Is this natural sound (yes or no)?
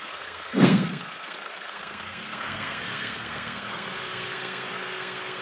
no